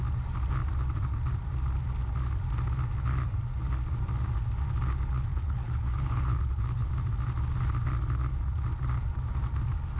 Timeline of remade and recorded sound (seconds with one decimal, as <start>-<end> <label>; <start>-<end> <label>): 0.0-5.3 recorded; 5.3-6.9 remade; 6.9-10.0 recorded

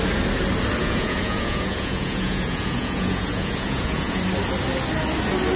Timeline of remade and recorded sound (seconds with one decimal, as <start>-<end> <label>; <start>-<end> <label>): 0.0-0.8 recorded; 0.8-4.2 remade; 4.2-5.6 recorded

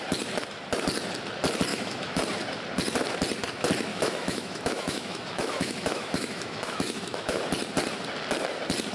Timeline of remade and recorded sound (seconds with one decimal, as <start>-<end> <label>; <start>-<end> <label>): 0.0-1.7 recorded; 1.7-2.2 remade; 2.2-3.9 recorded; 3.9-7.4 remade; 7.4-8.9 recorded

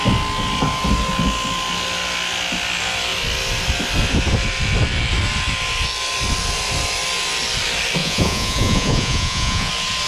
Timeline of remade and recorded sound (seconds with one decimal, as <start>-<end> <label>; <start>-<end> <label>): 0.0-8.0 recorded; 8.0-9.7 remade; 9.7-10.1 recorded

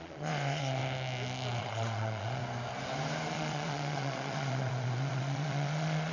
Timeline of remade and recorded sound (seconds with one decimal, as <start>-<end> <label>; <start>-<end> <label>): 0.0-0.8 remade; 0.8-1.6 recorded; 1.6-2.4 remade; 2.4-3.3 recorded; 3.3-6.1 remade

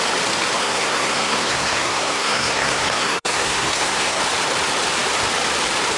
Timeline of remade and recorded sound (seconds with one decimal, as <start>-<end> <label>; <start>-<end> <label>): 0.0-0.6 recorded; 0.6-4.2 remade; 4.2-6.0 recorded

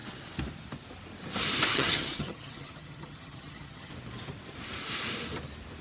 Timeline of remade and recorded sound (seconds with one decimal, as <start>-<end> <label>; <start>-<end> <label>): 0.0-1.7 recorded; 1.7-3.9 remade; 3.9-5.8 recorded

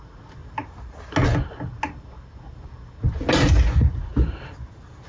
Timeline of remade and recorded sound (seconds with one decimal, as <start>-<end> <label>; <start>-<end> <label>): 0.0-0.4 remade; 0.4-3.5 recorded; 3.5-4.1 remade; 4.1-5.1 recorded